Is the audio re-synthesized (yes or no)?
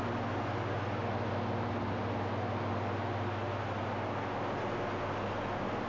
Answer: no